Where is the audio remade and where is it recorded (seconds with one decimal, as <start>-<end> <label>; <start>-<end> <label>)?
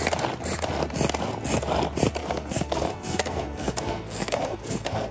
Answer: 0.0-2.2 recorded; 2.2-5.1 remade